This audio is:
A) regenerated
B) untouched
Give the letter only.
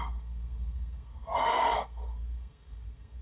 A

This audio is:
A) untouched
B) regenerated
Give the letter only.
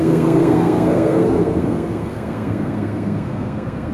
B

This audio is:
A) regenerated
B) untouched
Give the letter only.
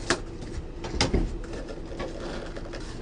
B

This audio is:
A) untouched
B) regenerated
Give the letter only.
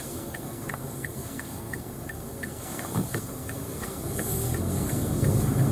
B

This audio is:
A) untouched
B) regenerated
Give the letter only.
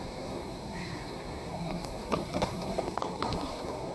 B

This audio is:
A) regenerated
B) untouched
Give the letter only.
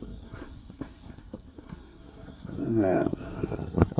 A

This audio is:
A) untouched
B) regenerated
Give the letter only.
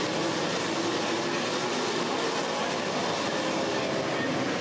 A